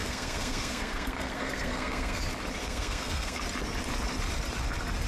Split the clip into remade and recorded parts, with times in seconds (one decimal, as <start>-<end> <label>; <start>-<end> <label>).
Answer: 0.0-2.2 remade; 2.2-2.6 recorded; 2.6-3.4 remade; 3.4-5.1 recorded